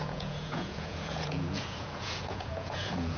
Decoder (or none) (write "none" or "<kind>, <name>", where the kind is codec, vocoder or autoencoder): vocoder, Vocos